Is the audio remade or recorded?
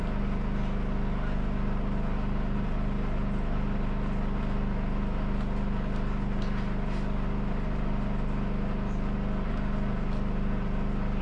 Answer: recorded